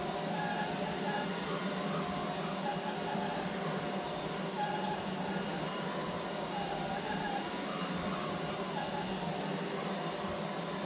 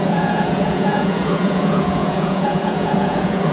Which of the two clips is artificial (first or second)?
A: second